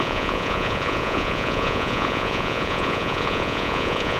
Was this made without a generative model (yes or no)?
no